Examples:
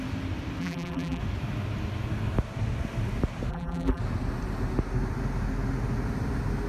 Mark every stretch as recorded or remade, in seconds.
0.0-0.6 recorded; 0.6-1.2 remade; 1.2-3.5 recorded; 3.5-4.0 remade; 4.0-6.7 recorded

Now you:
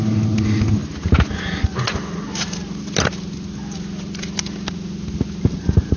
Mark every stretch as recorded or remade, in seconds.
0.0-6.0 recorded

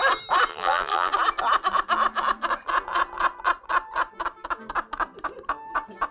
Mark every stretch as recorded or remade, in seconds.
0.0-0.5 recorded; 0.5-1.1 remade; 1.1-6.1 recorded

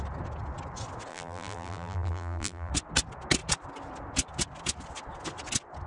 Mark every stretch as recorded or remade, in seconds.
0.0-1.1 recorded; 1.1-2.7 remade; 2.7-5.9 recorded

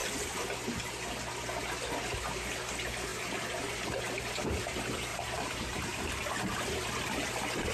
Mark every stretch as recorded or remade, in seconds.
0.0-5.1 recorded; 5.1-6.3 remade; 6.3-7.7 recorded

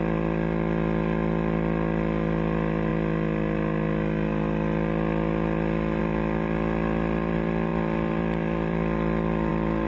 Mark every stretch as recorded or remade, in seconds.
0.0-2.9 remade; 2.9-6.0 recorded; 6.0-9.9 remade

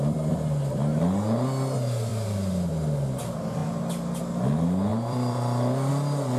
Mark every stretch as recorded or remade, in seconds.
0.0-2.1 recorded; 2.1-2.7 remade; 2.7-4.9 recorded; 4.9-5.9 remade; 5.9-6.4 recorded

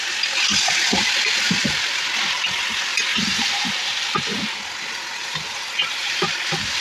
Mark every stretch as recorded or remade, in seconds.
0.0-2.9 recorded; 2.9-4.6 remade; 4.6-5.2 recorded; 5.2-6.8 remade